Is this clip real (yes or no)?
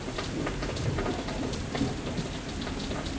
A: yes